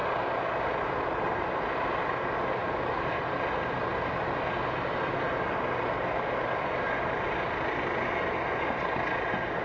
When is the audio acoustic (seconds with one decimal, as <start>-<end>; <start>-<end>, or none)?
0.0-9.6